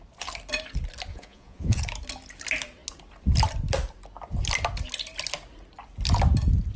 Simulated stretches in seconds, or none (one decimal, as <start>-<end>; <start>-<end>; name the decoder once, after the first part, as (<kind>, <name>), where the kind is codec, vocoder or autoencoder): 1.1-1.8 (vocoder, Vocos)